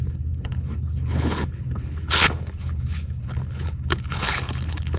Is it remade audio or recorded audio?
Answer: remade